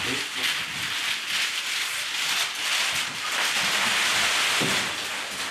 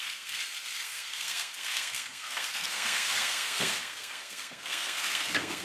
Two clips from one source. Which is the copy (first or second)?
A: second